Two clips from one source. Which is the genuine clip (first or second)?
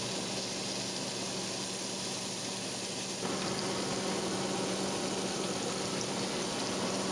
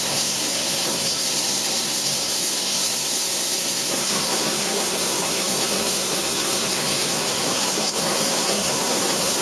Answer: first